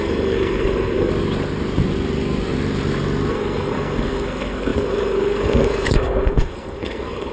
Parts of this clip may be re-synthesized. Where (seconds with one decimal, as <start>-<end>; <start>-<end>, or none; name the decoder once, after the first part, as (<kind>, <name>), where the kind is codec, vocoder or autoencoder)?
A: 0.0-1.1 (codec, SNAC); 3.3-7.3